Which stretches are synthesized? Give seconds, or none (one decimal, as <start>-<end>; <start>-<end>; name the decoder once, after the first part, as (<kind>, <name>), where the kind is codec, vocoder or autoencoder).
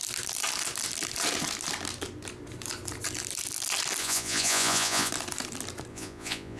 4.0-5.1 (vocoder, Vocos); 5.9-6.6